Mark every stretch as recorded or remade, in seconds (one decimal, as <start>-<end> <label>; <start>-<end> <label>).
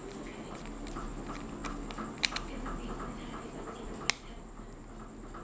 0.0-5.4 recorded